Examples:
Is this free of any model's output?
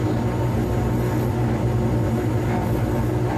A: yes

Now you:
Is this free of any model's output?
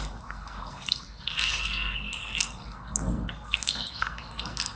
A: no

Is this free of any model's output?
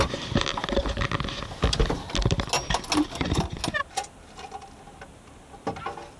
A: yes